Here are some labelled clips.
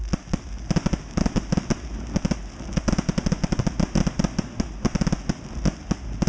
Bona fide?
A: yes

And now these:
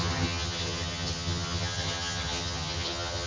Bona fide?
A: no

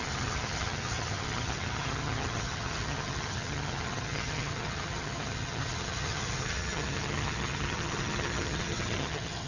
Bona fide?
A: no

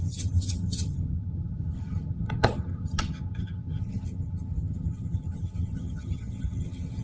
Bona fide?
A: no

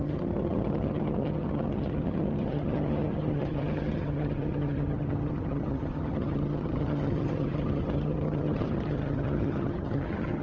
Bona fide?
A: no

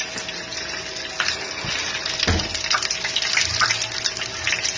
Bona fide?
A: yes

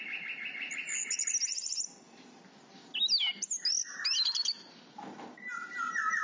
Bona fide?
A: yes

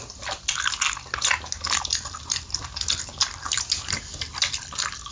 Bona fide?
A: yes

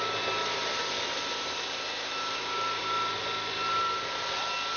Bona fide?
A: yes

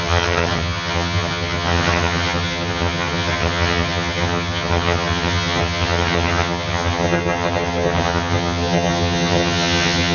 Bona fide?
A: no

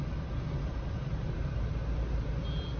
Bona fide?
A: yes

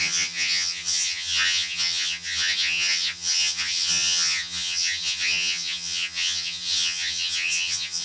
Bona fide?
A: no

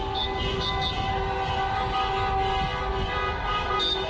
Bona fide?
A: yes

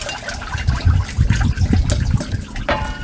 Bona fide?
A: yes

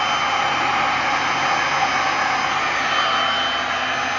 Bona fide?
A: yes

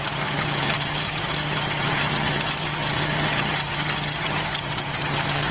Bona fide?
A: no